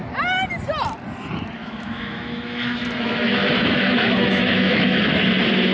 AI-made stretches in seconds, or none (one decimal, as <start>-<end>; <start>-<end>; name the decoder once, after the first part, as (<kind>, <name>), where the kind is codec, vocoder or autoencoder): 1.6-5.0 (autoencoder, DAC-VAE)